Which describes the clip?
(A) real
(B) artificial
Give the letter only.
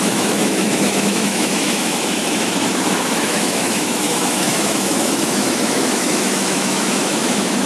B